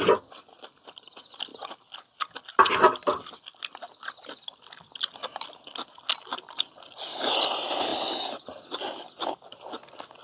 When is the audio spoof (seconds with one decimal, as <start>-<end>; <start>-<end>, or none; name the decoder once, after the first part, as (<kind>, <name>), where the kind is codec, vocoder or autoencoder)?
none